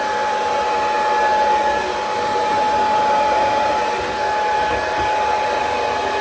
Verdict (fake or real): real